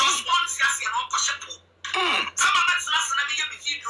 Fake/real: real